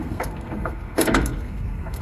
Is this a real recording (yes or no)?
no